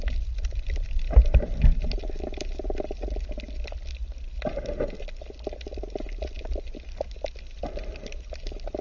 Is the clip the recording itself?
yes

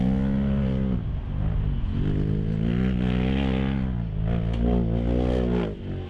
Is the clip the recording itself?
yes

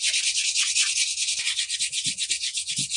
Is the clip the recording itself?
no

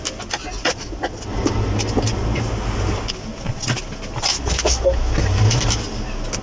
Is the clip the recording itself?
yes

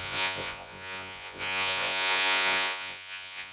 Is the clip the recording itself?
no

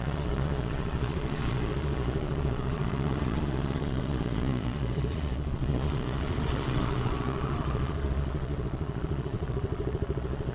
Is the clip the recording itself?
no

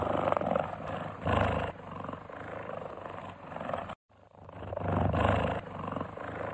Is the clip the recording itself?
yes